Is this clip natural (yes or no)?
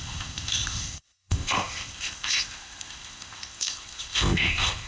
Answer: no